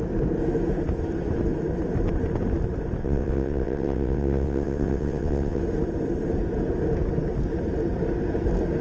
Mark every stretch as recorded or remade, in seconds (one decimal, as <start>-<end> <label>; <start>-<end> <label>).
0.0-3.0 recorded; 3.0-5.6 remade; 5.6-8.8 recorded